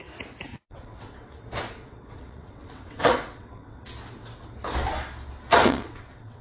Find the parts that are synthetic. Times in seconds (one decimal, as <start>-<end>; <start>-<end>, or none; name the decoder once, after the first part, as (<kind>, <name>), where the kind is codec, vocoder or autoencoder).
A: 0.5-1.4 (vocoder, WaveNeXt); 1.8-3.9; 5.6-6.4